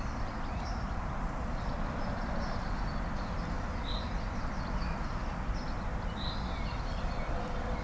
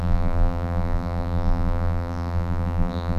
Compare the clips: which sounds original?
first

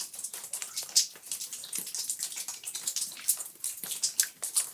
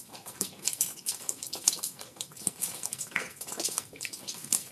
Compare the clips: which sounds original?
first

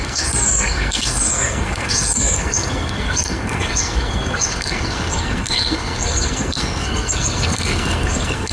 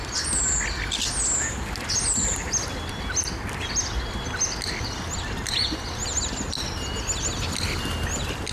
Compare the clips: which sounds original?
second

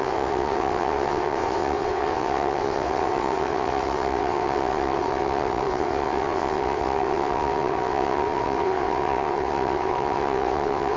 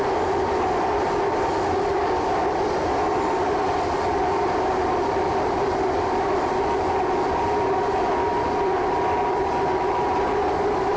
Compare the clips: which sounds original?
second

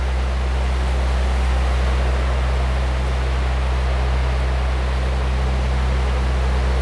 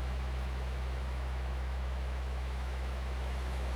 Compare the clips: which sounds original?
first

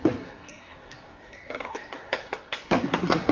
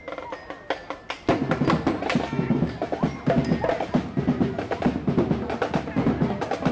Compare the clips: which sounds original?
second